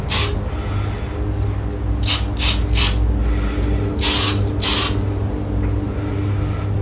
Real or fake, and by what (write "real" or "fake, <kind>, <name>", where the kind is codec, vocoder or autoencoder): real